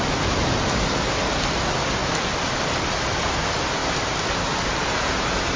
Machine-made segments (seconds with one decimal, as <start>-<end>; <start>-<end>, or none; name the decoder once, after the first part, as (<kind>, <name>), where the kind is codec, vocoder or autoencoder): none